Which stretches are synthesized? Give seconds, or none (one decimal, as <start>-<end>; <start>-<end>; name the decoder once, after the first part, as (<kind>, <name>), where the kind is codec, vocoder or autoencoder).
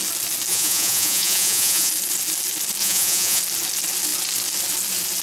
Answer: 0.5-1.9 (vocoder, Vocos); 2.8-3.4